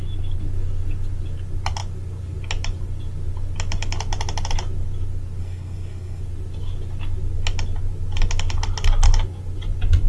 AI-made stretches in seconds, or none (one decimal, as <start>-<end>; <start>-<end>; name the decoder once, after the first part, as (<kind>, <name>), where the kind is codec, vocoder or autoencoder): 5.4-6.2 (codec, SNAC)